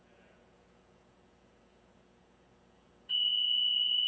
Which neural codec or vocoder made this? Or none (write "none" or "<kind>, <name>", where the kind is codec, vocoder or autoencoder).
vocoder, Vocos